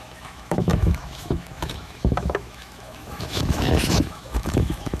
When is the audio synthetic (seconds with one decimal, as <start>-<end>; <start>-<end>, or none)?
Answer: 0.0-5.0